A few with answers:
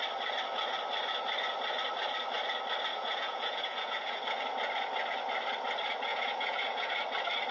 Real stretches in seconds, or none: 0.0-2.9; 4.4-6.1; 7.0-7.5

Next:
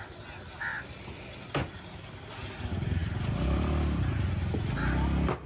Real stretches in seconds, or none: 0.0-5.5

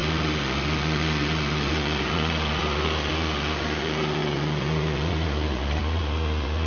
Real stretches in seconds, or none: none

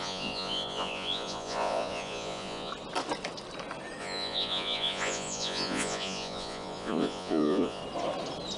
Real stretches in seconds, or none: 2.7-4.0; 7.8-8.6

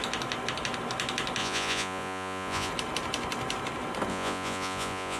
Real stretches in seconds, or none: 0.0-1.4; 2.7-4.1

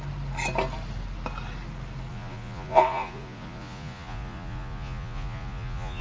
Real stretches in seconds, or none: 0.0-2.1